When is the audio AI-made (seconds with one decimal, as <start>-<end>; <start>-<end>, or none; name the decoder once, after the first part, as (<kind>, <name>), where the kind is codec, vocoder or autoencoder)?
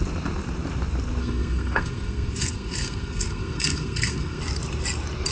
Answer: 1.2-4.4 (codec, SNAC)